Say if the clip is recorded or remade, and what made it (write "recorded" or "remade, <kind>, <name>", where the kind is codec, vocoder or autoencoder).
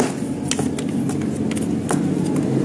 recorded